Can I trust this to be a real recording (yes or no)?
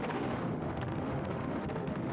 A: no